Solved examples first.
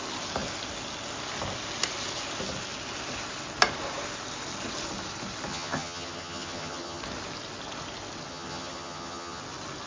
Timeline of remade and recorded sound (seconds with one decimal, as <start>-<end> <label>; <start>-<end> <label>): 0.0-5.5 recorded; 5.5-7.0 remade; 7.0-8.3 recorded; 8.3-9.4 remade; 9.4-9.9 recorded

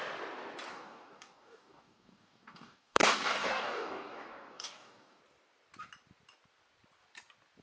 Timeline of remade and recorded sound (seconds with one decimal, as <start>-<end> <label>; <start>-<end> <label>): 0.0-0.7 recorded; 0.7-5.2 remade; 5.2-7.6 recorded

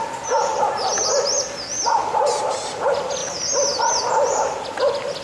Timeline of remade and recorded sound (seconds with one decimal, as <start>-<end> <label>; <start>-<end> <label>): 0.0-5.2 recorded